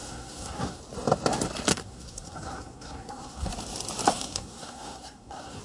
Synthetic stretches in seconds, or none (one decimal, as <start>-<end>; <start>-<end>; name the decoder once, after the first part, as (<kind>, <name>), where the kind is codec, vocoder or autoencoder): 0.0-0.8 (codec, SNAC); 1.7-3.5; 4.1-5.6